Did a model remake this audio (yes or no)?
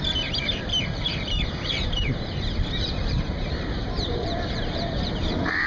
yes